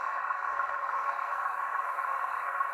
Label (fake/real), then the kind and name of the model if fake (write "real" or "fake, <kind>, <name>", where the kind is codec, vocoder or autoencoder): fake, codec, SNAC